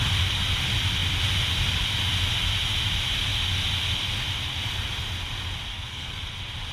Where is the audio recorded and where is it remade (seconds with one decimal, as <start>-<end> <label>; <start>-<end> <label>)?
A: 0.0-5.7 recorded; 5.7-6.3 remade; 6.3-6.7 recorded